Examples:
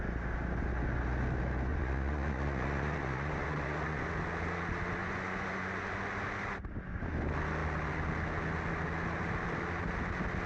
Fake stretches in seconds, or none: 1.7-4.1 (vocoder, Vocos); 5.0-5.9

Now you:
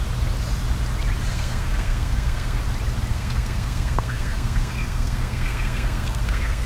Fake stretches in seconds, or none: 1.3-2.6 (codec, SNAC); 3.1-6.7

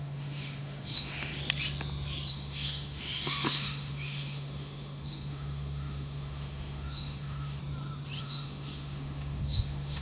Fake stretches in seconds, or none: 0.0-1.3 (autoencoder, DAC-VAE); 2.3-7.6; 8.2-10.0

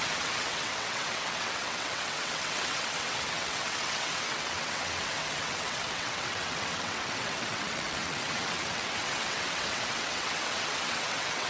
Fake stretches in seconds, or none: 0.0-11.5 (vocoder, WaveNeXt)

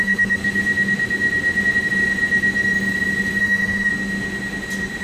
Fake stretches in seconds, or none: 0.0-0.4 (autoencoder, DAC-VAE); 3.4-3.9